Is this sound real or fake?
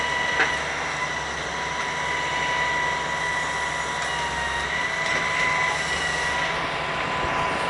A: real